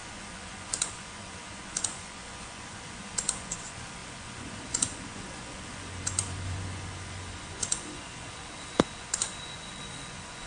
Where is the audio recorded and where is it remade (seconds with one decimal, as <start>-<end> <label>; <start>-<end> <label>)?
0.0-10.5 remade